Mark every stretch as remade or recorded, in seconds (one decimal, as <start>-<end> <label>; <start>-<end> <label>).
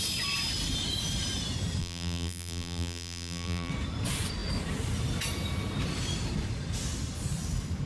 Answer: 0.0-1.8 recorded; 1.8-3.7 remade; 3.7-7.9 recorded